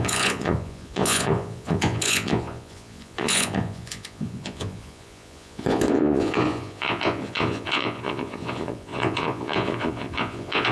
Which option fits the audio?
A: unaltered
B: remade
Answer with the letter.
B